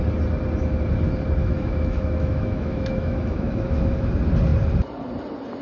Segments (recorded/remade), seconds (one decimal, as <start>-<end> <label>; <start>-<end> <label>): 0.0-1.4 recorded; 1.4-4.1 remade; 4.1-5.6 recorded